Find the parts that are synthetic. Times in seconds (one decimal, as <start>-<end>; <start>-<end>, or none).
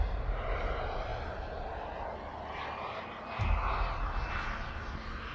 none